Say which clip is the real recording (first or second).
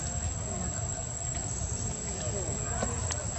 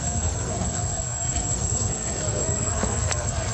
first